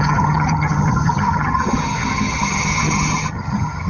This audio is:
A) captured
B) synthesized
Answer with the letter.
B